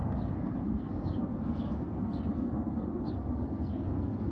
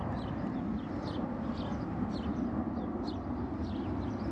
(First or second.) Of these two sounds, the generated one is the first